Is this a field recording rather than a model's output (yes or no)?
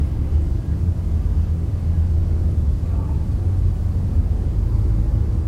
no